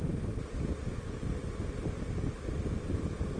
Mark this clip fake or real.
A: real